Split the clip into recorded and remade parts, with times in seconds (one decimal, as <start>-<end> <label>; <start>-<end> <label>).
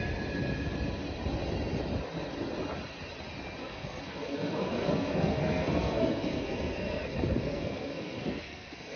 0.0-3.6 recorded; 3.6-9.0 remade